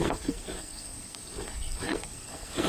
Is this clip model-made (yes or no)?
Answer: yes